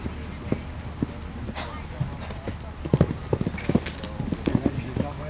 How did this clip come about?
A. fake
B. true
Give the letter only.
B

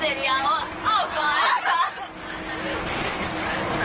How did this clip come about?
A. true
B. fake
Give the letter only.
A